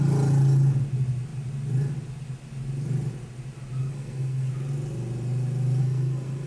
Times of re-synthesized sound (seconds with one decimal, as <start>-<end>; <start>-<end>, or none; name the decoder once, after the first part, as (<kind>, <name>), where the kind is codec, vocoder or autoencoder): 3.8-4.5 (codec, SNAC); 5.8-6.5